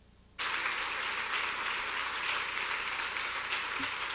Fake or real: real